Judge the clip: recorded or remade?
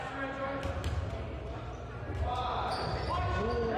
recorded